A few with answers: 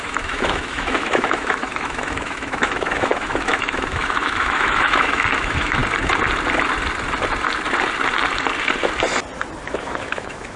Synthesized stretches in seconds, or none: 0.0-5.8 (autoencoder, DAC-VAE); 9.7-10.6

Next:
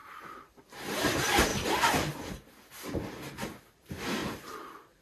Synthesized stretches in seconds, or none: 0.0-1.5 (vocoder, BigVGAN v2); 3.5-5.0

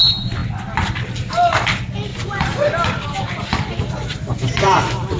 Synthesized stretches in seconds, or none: 2.1-4.8 (vocoder, BigVGAN v2)

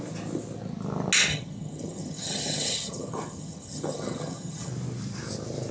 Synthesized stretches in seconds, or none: 1.3-4.7 (vocoder, HiFi-GAN)

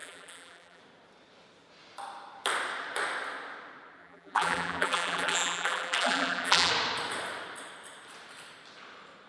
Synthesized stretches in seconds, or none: 0.0-0.8 (vocoder, BigVGAN v2); 4.0-6.7

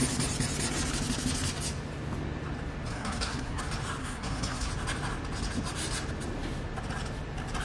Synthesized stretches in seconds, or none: 2.9-3.6 (codec, SNAC); 4.0-4.7

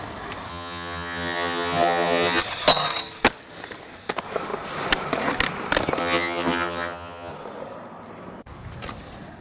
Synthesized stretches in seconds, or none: 0.5-2.4 (vocoder, HiFi-GAN); 6.0-7.3

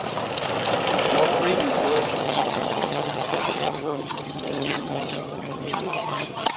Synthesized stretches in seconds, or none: 2.2-6.6 (vocoder, HiFi-GAN)